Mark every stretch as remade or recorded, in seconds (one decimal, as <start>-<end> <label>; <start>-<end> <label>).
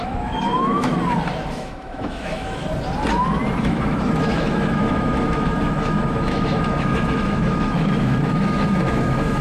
0.0-0.9 remade; 0.9-1.5 recorded; 1.5-2.6 remade; 2.6-3.6 recorded; 3.6-9.4 remade